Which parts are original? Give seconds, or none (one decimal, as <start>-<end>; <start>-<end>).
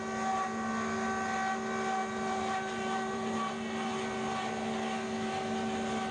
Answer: 0.0-2.0; 3.9-6.1